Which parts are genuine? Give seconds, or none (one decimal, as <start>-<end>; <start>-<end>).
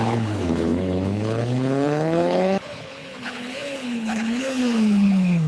none